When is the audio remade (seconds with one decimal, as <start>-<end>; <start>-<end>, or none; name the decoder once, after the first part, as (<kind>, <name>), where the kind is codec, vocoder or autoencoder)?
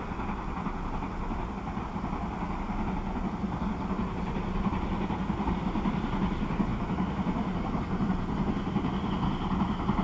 none